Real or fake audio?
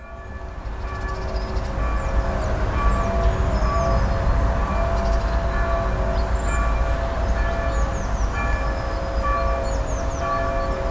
real